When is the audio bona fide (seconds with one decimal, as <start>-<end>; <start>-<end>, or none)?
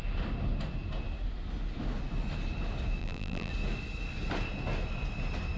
0.0-3.0; 3.5-5.6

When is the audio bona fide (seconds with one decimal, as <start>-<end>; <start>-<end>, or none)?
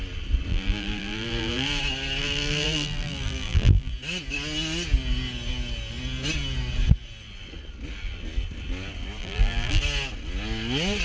0.0-0.5; 1.8-2.2; 3.9-9.2; 9.8-11.0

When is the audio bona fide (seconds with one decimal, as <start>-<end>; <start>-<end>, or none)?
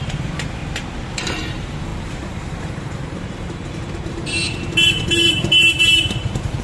0.6-1.1; 4.4-5.0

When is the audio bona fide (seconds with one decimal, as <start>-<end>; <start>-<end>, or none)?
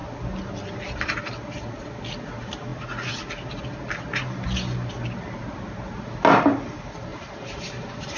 0.0-7.1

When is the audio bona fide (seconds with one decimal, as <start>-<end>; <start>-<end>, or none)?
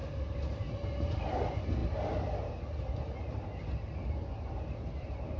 0.0-1.2; 1.8-5.0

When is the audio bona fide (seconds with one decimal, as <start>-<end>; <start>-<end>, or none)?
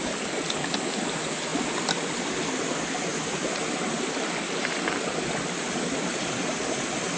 1.5-2.5